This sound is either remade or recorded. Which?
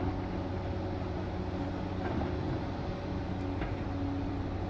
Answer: recorded